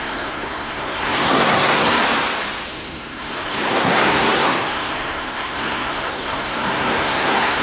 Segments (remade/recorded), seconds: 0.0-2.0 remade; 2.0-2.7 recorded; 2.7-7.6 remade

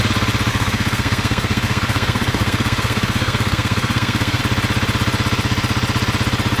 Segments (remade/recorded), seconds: 0.0-0.5 recorded; 0.5-4.4 remade; 4.4-6.6 recorded

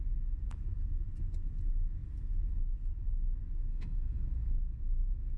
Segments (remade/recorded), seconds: 0.0-3.7 recorded; 3.7-4.2 remade; 4.2-5.4 recorded

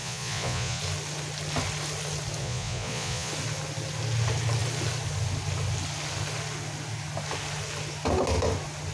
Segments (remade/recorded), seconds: 0.0-0.8 remade; 0.8-2.4 recorded; 2.4-3.3 remade; 3.3-8.9 recorded

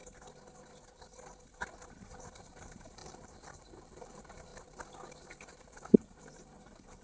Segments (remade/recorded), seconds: 0.0-2.0 recorded; 2.0-4.5 remade; 4.5-5.3 recorded; 5.3-7.0 remade

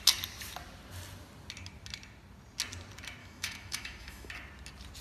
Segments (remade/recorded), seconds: 0.0-3.2 recorded; 3.2-4.3 remade; 4.3-5.0 recorded

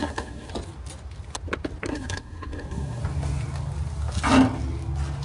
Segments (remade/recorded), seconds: 0.0-0.5 remade; 0.5-1.9 recorded; 1.9-3.0 remade; 3.0-5.2 recorded

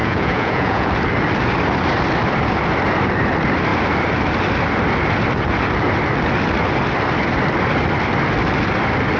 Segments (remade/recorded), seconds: 0.0-0.9 remade; 0.9-9.2 recorded